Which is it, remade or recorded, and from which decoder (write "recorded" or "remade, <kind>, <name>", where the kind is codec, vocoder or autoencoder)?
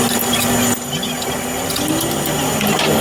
recorded